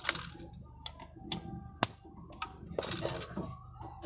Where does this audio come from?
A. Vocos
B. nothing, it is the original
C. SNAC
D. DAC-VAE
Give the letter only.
B